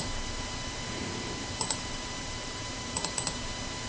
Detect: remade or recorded remade